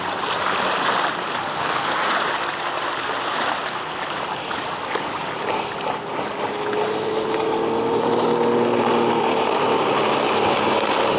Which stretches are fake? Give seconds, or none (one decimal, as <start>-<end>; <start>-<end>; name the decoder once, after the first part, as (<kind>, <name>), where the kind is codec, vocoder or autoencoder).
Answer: 1.4-2.1 (codec, SNAC)